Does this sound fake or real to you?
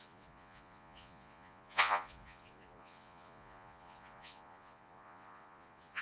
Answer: fake